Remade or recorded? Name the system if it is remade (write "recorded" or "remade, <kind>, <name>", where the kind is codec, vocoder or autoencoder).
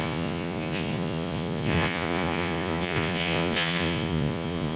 remade, vocoder, Vocos